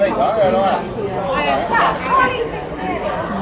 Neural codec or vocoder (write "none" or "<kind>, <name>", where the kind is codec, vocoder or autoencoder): none